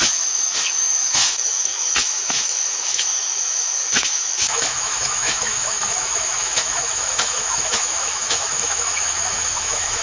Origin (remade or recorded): remade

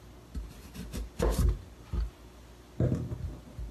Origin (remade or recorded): recorded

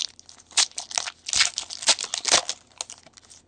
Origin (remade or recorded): recorded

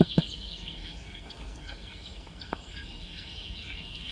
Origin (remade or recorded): remade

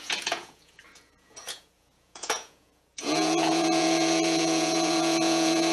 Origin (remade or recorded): remade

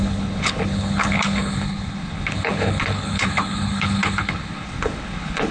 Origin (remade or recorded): remade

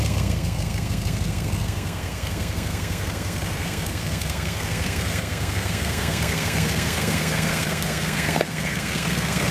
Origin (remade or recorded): remade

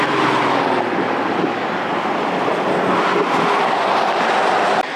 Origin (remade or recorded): recorded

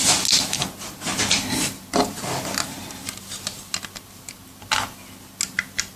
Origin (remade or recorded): recorded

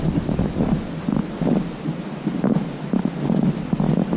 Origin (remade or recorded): recorded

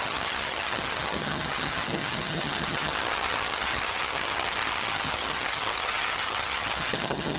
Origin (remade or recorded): remade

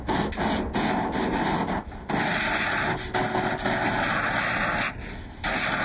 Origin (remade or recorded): recorded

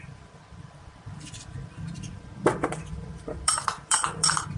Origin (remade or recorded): remade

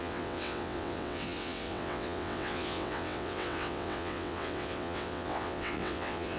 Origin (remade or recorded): remade